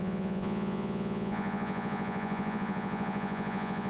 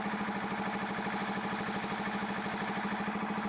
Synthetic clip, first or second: first